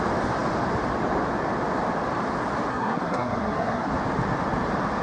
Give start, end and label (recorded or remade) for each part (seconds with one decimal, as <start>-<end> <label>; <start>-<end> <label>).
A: 0.0-2.7 recorded; 2.7-3.9 remade; 3.9-5.0 recorded

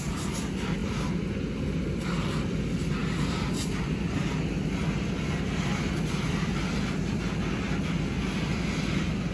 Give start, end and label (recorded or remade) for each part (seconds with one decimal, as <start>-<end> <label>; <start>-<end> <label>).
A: 0.0-9.3 recorded